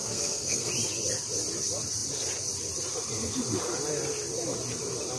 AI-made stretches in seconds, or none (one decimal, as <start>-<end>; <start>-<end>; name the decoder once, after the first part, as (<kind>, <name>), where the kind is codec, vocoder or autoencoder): 0.0-0.7 (codec, SNAC)

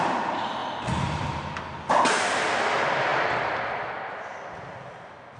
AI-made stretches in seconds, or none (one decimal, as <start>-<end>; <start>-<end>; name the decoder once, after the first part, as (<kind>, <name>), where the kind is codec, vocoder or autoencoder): none

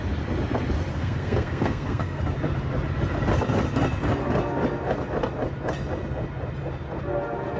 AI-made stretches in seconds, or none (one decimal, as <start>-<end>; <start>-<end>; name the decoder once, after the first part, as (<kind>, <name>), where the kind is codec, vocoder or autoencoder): 0.9-2.2 (codec, SNAC)

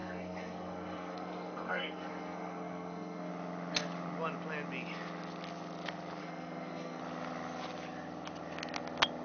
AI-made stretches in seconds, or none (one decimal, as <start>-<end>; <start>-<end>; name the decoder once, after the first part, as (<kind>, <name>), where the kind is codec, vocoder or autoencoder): 0.0-3.3 (codec, SNAC); 6.2-7.0